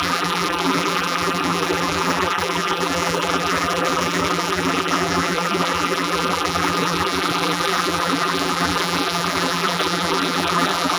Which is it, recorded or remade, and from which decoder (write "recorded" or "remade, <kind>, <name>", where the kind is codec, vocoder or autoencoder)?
remade, vocoder, BigVGAN v2